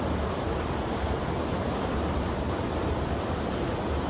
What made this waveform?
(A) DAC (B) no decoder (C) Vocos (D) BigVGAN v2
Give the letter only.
B